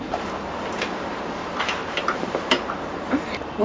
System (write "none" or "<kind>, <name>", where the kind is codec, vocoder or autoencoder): vocoder, BigVGAN v2